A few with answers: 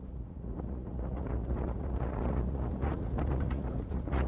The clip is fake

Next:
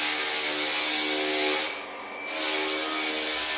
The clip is real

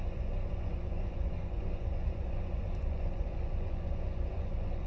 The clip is fake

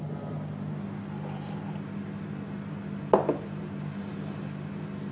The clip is real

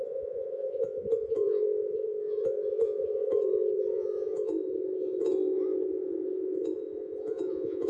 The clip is fake